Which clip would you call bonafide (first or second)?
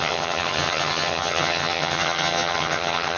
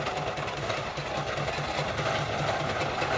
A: second